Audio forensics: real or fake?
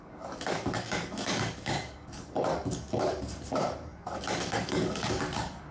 fake